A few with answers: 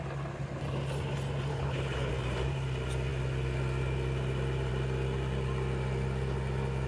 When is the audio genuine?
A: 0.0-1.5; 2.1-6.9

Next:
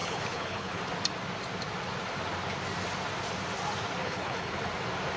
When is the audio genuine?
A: 0.8-4.0; 4.6-5.2

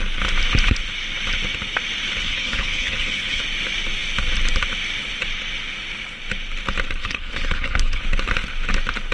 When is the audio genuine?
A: 0.0-2.2; 3.4-7.0; 8.0-9.1

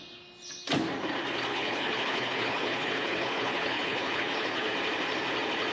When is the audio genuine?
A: 0.0-1.5; 4.7-5.7

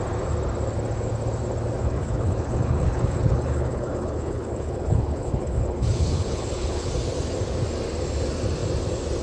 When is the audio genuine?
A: 0.0-1.8; 6.9-9.2

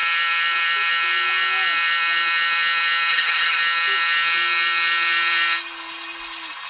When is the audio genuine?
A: 0.0-3.1; 3.6-6.7

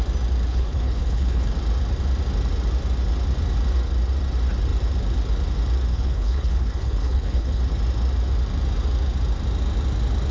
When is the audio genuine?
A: 0.0-0.5; 1.5-5.9; 7.6-10.3